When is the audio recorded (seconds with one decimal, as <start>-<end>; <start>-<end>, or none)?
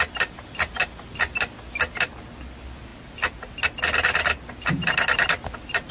0.0-5.9